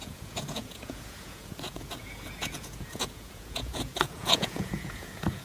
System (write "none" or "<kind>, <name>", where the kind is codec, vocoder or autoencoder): vocoder, Vocos